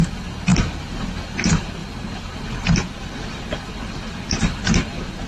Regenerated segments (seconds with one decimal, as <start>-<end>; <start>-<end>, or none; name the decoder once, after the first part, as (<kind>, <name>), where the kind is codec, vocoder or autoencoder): none